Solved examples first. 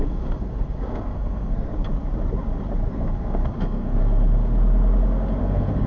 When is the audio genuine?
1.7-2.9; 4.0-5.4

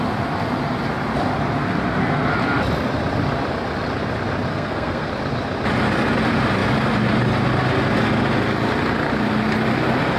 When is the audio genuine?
0.0-4.5; 5.1-10.2

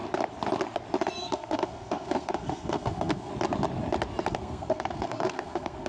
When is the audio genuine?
0.0-1.1; 3.3-4.3